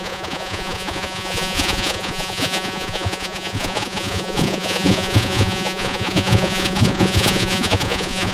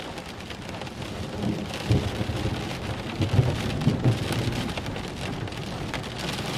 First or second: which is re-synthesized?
first